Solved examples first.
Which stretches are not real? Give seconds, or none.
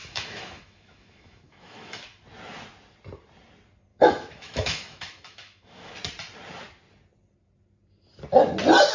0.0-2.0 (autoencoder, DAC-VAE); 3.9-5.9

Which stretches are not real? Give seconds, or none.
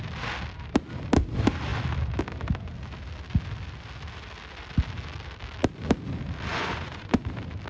6.5-7.2 (vocoder, Vocos)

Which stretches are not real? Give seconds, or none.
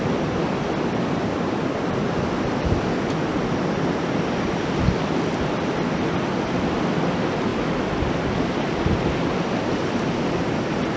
none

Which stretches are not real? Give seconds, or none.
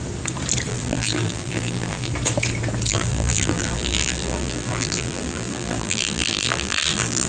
0.7-2.1 (vocoder, BigVGAN v2); 2.9-7.3